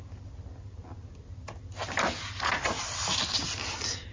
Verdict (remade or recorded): recorded